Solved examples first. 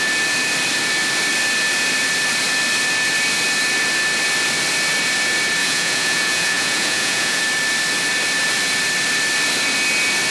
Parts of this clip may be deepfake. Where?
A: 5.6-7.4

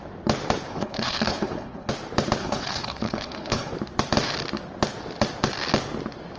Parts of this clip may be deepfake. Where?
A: 0.7-1.9; 2.4-3.7

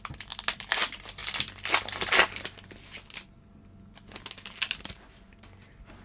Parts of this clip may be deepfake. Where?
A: none

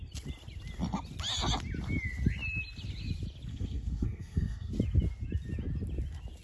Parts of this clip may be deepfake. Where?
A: 3.5-4.7